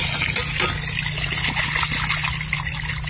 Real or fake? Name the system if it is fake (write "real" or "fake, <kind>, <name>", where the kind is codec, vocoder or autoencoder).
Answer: real